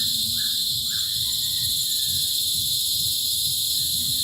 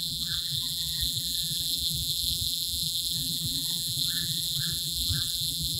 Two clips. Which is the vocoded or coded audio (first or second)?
second